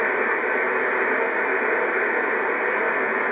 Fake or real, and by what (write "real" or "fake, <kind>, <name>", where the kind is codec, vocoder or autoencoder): real